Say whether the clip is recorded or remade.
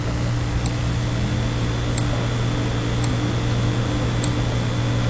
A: recorded